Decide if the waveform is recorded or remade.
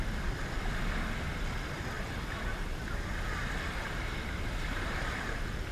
recorded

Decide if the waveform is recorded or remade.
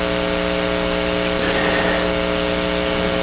recorded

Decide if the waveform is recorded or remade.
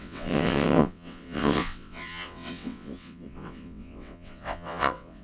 remade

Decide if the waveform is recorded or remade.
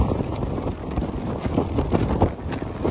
recorded